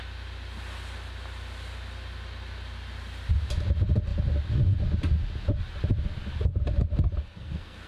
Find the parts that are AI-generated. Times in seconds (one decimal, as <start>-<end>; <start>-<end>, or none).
7.2-7.9